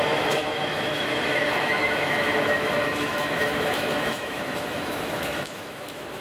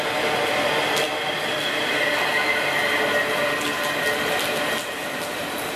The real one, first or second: second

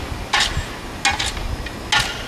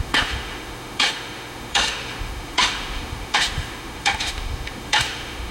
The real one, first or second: first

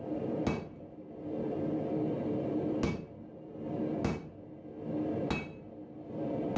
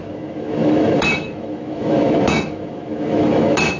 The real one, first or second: first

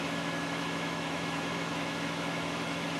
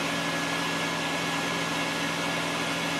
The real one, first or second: second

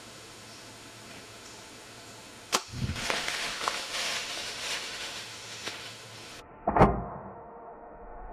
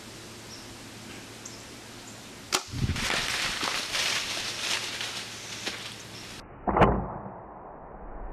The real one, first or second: second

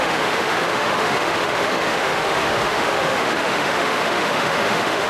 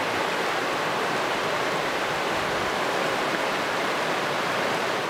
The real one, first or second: second